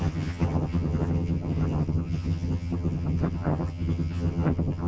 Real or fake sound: fake